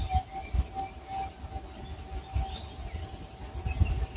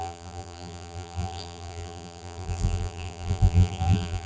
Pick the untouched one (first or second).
first